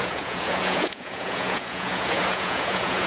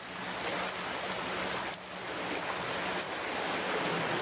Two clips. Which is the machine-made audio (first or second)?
first